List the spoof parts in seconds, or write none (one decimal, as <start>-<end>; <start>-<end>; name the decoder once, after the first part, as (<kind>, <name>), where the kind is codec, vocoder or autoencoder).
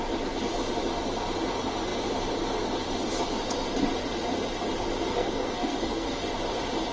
5.1-6.2 (codec, SNAC)